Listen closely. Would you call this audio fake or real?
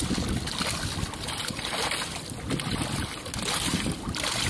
real